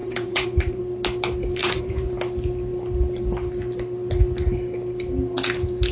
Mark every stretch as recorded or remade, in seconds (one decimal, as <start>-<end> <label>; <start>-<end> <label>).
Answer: 0.0-0.8 remade; 0.8-1.6 recorded; 1.6-2.1 remade; 2.1-5.9 recorded